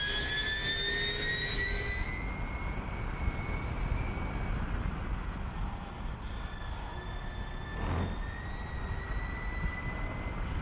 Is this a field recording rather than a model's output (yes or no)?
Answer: yes